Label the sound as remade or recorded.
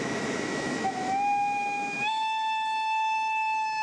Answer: remade